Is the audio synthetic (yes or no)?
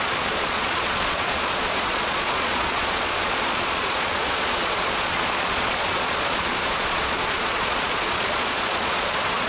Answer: yes